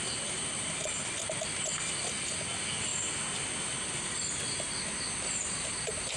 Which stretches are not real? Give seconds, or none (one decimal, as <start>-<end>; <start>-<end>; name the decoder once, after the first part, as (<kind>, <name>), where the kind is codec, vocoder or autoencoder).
none